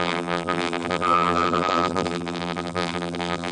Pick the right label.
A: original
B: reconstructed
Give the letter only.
B